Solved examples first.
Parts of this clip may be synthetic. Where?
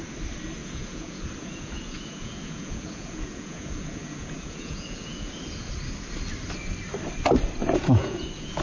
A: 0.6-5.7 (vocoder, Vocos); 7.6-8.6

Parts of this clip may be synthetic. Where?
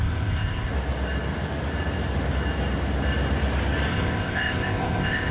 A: 0.0-0.7 (codec, ZipCodec); 3.9-5.3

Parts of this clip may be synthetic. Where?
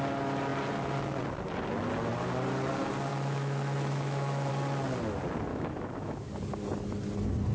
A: 3.1-4.5 (autoencoder, DAC-VAE); 5.5-6.3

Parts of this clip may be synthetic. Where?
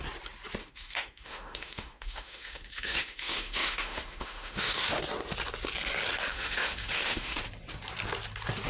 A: 0.6-5.0 (autoencoder, DAC-VAE); 6.3-7.4